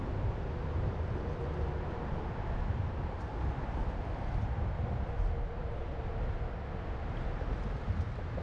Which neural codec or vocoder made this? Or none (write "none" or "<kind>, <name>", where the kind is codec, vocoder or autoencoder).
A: none